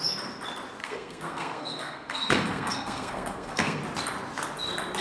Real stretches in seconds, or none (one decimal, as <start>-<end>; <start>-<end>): 0.0-0.8; 3.8-5.0